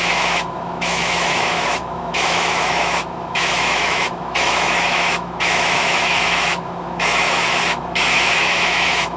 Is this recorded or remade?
remade